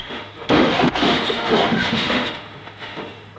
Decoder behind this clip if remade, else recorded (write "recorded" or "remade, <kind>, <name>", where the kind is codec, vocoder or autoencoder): remade, autoencoder, DAC-VAE